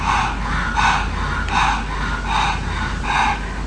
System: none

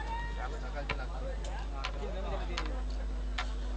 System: none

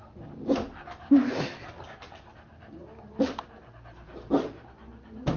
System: none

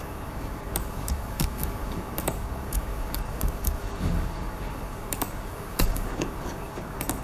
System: codec, DAC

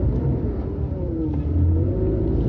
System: vocoder, BigVGAN v2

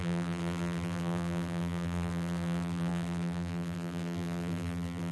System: vocoder, BigVGAN v2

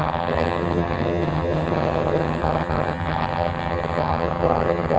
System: vocoder, HiFi-GAN